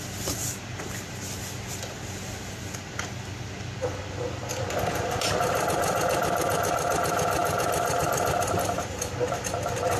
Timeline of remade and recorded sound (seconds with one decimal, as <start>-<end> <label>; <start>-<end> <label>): 0.0-10.0 recorded